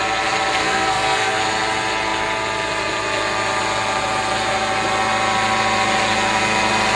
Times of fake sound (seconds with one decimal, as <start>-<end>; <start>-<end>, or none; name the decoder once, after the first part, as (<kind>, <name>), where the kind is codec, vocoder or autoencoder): 0.6-1.4 (codec, SNAC)